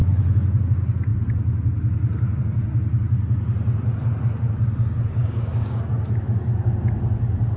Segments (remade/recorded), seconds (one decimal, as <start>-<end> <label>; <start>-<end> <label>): 0.0-5.2 recorded; 5.2-5.9 remade; 5.9-7.6 recorded